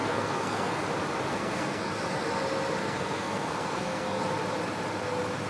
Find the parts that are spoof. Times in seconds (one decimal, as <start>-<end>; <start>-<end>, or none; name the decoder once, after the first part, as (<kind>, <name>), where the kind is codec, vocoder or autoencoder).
0.0-0.8 (codec, SNAC); 1.3-1.9; 2.8-4.2